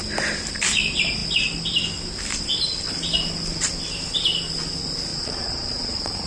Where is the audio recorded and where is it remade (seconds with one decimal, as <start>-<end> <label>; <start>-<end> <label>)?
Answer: 0.0-5.1 recorded; 5.1-6.3 remade

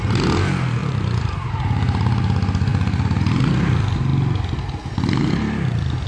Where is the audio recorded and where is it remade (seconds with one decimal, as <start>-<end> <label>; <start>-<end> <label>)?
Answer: 0.0-0.8 recorded; 0.8-1.5 remade; 1.5-2.7 recorded; 2.7-3.2 remade; 3.2-6.1 recorded

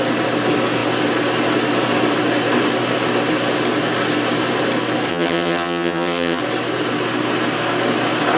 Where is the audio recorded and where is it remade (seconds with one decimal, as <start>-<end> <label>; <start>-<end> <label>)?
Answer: 0.0-5.1 recorded; 5.1-6.4 remade; 6.4-8.4 recorded

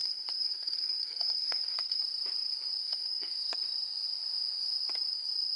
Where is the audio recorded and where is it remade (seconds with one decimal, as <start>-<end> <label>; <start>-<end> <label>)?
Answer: 0.0-2.0 remade; 2.0-2.8 recorded; 2.8-3.5 remade; 3.5-5.6 recorded

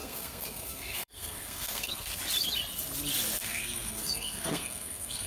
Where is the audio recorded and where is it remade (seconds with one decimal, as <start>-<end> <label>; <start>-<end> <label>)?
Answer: 0.0-2.2 remade; 2.2-3.4 recorded; 3.4-5.3 remade

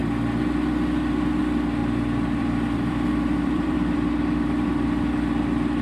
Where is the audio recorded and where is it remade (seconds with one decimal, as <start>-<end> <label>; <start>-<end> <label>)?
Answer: 0.0-1.8 recorded; 1.8-4.6 remade; 4.6-5.8 recorded

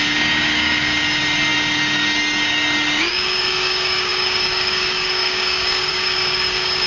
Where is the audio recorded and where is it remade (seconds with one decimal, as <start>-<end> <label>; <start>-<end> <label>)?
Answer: 0.0-6.9 remade

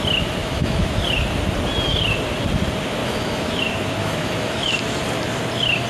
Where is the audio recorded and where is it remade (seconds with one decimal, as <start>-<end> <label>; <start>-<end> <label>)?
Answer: 0.0-0.4 recorded; 0.4-1.0 remade; 1.0-3.0 recorded; 3.0-3.6 remade; 3.6-4.0 recorded; 4.0-4.7 remade; 4.7-5.9 recorded